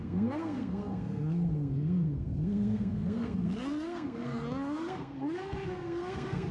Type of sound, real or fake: fake